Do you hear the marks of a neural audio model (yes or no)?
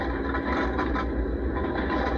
no